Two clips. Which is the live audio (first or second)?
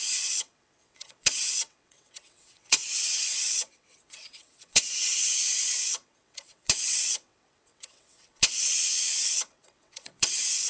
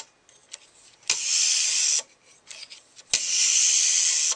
second